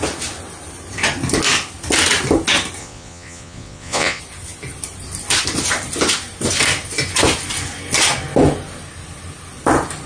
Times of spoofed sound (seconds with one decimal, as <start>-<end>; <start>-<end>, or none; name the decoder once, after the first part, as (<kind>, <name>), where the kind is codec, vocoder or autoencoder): 2.8-4.2 (vocoder, Vocos)